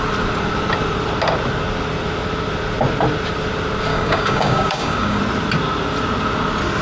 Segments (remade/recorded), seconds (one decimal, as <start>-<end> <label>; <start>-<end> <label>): 0.0-3.9 recorded; 3.9-5.2 remade; 5.2-6.8 recorded